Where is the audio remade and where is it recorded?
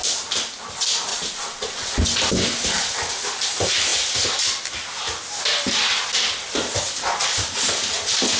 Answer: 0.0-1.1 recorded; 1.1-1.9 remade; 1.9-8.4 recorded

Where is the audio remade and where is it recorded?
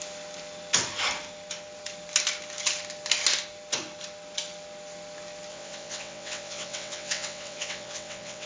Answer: 0.0-5.5 recorded; 5.5-8.5 remade